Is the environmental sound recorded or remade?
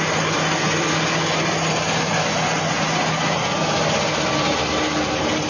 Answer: recorded